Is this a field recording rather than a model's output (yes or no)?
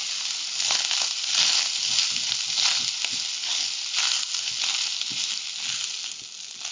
yes